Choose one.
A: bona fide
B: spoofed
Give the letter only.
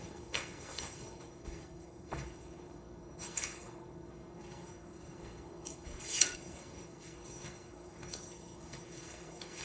B